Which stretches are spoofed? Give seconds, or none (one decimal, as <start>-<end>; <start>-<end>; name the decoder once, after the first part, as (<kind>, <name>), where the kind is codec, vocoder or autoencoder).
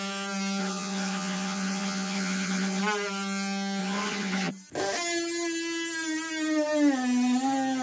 0.6-2.8 (vocoder, HiFi-GAN); 3.8-4.5